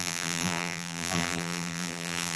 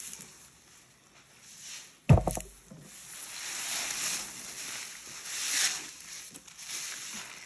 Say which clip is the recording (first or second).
second